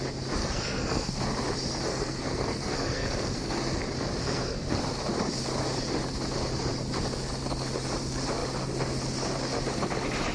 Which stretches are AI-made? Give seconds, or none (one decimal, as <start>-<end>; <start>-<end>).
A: 0.4-1.1; 1.9-3.8; 4.2-4.8